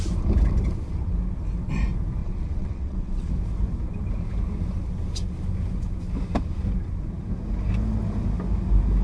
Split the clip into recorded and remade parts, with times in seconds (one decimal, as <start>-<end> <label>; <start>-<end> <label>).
0.0-2.2 recorded; 2.2-3.3 remade; 3.3-9.0 recorded